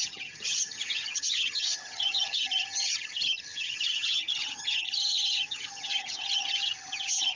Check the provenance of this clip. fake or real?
fake